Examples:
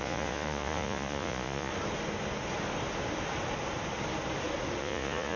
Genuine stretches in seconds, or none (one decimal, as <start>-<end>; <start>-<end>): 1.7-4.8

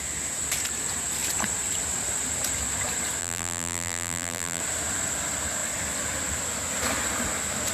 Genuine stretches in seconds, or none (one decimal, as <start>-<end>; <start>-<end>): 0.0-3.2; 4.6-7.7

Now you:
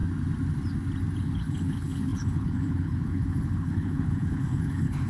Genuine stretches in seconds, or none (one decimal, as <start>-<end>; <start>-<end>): 0.0-1.2

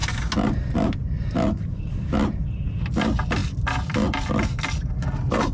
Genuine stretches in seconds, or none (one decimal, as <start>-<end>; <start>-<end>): 0.0-3.4; 4.3-5.5

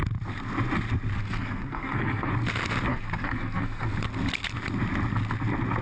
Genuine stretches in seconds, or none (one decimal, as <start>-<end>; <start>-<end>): 0.0-1.2; 2.3-2.9; 3.9-5.8

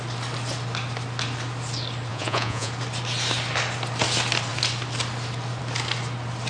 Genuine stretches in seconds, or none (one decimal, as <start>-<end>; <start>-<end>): 0.0-2.1; 2.7-6.5

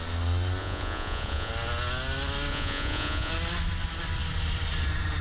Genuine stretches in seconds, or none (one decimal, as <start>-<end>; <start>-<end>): 0.0-0.6; 1.5-2.5; 3.3-5.2